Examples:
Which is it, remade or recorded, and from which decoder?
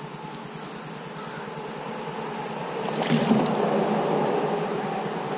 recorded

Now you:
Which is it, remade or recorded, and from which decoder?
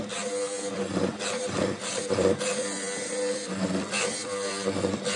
remade, vocoder, BigVGAN v2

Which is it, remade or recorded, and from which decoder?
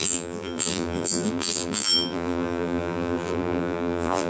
remade, vocoder, BigVGAN v2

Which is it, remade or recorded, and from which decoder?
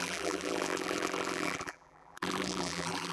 remade, vocoder, BigVGAN v2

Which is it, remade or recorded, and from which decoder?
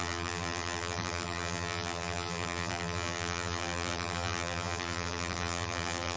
remade, vocoder, BigVGAN v2